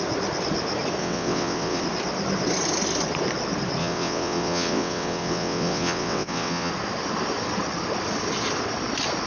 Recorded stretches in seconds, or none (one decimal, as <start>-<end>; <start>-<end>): 0.0-1.0; 1.8-3.8; 6.7-9.3